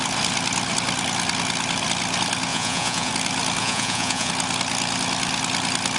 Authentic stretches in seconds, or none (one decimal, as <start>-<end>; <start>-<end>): 0.0-2.5; 3.1-3.6; 4.3-6.0